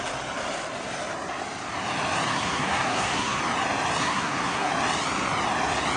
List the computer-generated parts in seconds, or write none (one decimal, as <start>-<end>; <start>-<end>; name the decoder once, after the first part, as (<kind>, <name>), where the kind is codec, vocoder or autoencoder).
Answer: 2.3-3.4 (codec, SNAC); 4.0-4.7